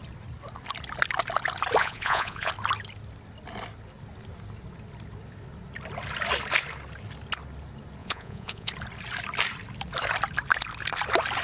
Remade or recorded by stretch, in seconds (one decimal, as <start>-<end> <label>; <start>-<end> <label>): 0.0-1.8 recorded; 1.8-2.5 remade; 2.5-8.0 recorded; 8.0-8.7 remade; 8.7-11.4 recorded